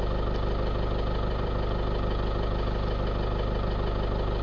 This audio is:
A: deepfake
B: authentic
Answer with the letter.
A